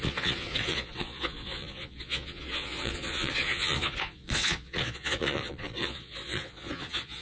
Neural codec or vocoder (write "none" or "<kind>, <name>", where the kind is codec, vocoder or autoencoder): vocoder, Vocos